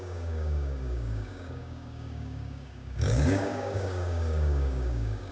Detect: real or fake fake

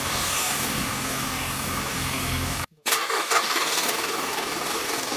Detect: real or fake fake